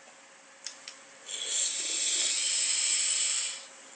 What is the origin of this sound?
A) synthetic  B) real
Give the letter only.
B